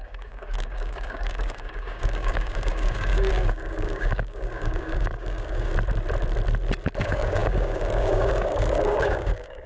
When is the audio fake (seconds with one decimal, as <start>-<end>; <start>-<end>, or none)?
0.0-5.7; 7.0-9.7